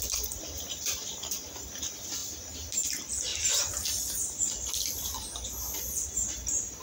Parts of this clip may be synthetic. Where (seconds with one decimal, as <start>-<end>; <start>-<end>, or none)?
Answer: 0.0-6.8